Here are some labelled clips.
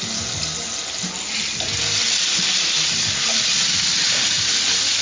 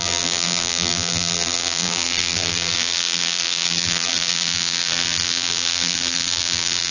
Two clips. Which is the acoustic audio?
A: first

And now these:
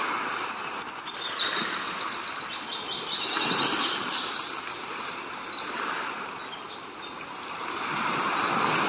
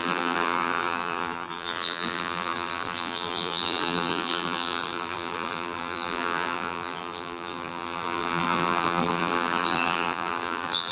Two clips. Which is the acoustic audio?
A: first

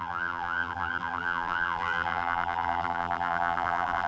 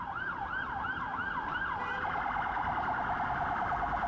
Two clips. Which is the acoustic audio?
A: second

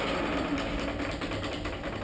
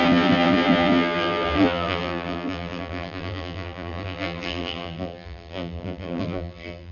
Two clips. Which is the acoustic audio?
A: first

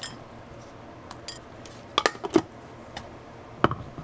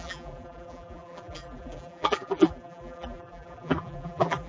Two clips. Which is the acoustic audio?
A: first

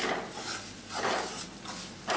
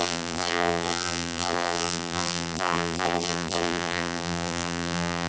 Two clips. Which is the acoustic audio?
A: first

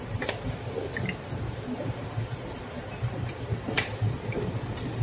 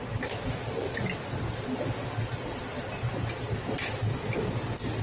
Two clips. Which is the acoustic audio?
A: second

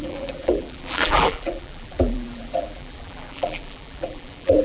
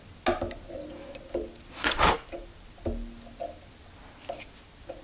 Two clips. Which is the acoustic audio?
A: second